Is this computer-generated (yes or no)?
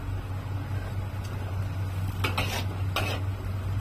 no